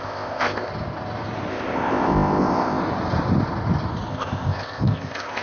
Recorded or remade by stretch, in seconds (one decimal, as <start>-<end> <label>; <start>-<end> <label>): 0.0-0.7 remade; 0.7-1.5 recorded; 1.5-2.8 remade; 2.8-4.1 recorded; 4.1-5.4 remade